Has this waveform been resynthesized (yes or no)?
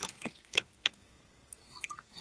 yes